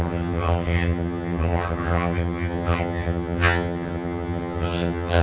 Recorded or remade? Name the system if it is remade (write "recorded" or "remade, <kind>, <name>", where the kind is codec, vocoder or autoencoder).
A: remade, vocoder, HiFi-GAN